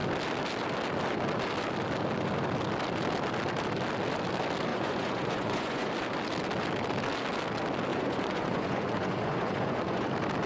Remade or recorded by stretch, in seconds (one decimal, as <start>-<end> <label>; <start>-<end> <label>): 0.0-4.7 recorded; 4.7-5.9 remade; 5.9-7.9 recorded; 7.9-10.1 remade; 10.1-10.5 recorded